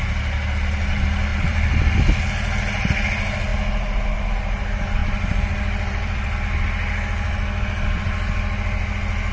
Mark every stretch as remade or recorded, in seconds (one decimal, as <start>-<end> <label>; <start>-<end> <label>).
0.0-1.3 recorded; 1.3-1.9 remade; 1.9-5.0 recorded; 5.0-6.4 remade; 6.4-9.3 recorded